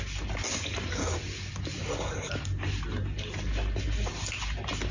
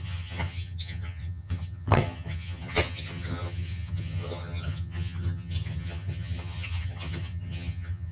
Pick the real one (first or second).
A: first